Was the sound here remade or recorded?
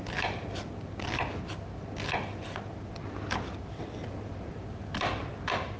recorded